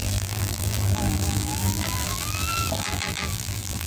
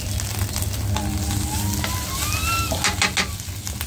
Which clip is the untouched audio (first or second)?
second